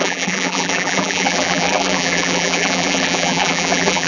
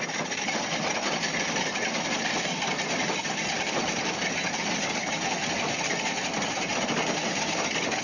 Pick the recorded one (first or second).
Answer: second